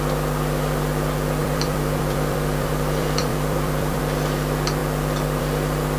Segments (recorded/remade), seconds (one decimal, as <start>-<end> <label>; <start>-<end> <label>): 0.0-1.4 recorded; 1.4-4.0 remade; 4.0-6.0 recorded